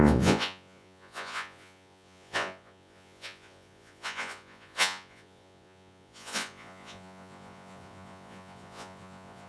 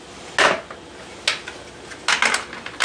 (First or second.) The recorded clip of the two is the second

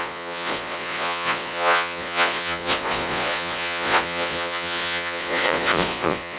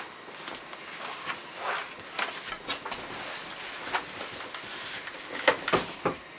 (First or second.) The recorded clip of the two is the second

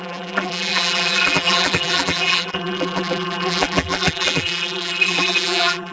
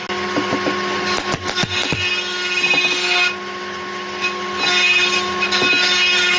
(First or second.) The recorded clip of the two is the second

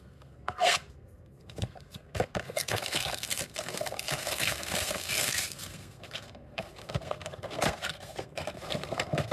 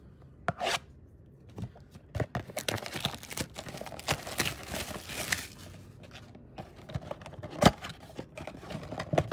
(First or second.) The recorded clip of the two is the second